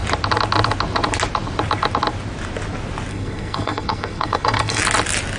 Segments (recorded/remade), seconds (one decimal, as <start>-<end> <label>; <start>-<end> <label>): 0.0-3.1 recorded; 3.1-4.8 remade; 4.8-5.4 recorded